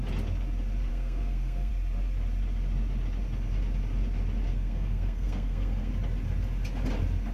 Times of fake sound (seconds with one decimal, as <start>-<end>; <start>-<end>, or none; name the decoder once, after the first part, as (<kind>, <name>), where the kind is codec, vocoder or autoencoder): 0.9-1.7 (codec, SNAC); 4.5-5.9